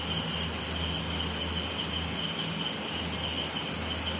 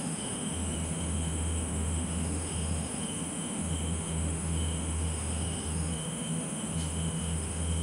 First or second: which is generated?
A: second